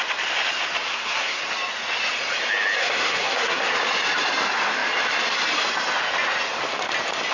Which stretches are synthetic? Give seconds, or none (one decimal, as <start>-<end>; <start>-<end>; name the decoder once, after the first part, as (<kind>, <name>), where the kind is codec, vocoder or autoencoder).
0.9-1.4 (codec, SNAC); 2.8-3.7